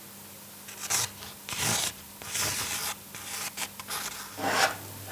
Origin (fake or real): real